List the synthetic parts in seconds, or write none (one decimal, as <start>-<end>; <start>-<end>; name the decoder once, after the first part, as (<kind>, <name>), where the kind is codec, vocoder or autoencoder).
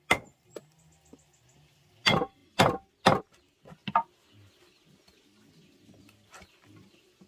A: none